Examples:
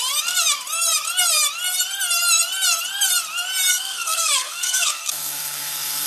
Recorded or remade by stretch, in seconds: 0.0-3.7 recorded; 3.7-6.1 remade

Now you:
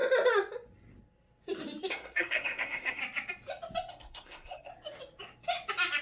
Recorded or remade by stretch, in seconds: 0.0-1.9 recorded; 1.9-3.0 remade; 3.0-3.9 recorded; 3.9-4.7 remade; 4.7-6.0 recorded

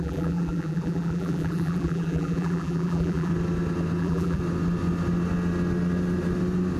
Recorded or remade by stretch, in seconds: 0.0-3.3 remade; 3.3-4.0 recorded; 4.0-4.4 remade; 4.4-6.8 recorded

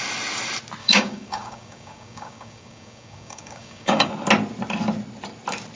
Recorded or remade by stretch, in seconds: 0.0-0.8 recorded; 0.8-4.1 remade; 4.1-5.8 recorded